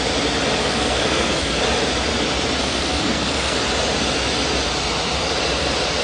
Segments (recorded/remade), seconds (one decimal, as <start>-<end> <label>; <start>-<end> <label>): 0.0-0.6 recorded; 0.6-1.6 remade; 1.6-2.6 recorded; 2.6-3.6 remade; 3.6-6.0 recorded